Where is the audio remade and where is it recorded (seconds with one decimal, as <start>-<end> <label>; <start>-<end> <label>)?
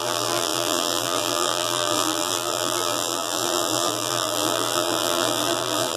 0.0-6.0 remade